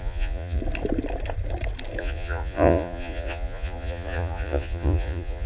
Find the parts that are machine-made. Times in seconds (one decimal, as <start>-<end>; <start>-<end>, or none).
0.0-0.6; 2.0-5.5